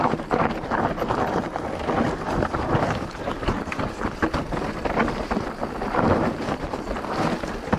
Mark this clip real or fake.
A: fake